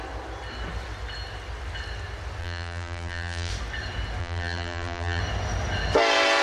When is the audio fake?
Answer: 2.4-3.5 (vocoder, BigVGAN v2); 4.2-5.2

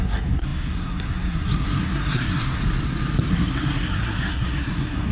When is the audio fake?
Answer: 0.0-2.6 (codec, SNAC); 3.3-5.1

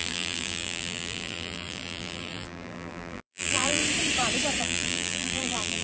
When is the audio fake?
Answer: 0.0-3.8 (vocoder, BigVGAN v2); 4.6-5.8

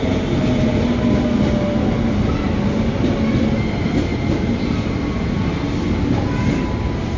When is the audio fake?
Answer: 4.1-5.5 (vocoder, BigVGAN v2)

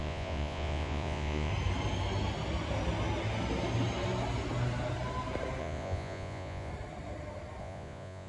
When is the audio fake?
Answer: 0.0-1.5 (vocoder, Vocos); 5.6-6.7; 7.6-8.3

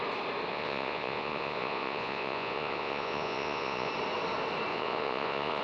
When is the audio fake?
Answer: 0.5-3.9 (vocoder, Vocos); 4.7-5.6

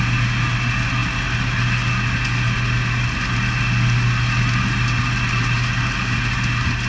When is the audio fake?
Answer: none

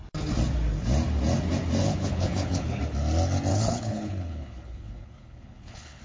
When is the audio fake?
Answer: 1.8-2.8 (codec, HILCodec); 3.5-6.0